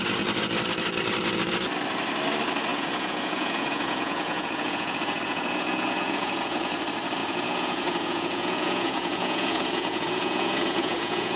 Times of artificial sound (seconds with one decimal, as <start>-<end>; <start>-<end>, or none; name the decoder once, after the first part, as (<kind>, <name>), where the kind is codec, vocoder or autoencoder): 2.7-6.8 (vocoder, Vocos); 7.2-11.4